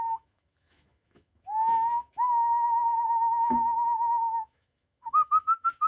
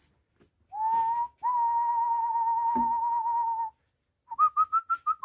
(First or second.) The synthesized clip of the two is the first